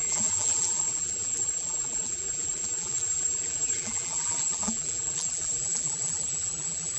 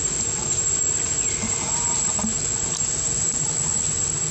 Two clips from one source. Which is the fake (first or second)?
first